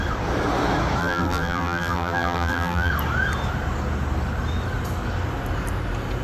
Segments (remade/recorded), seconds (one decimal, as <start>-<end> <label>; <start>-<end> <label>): 0.0-1.0 recorded; 1.0-2.9 remade; 2.9-6.2 recorded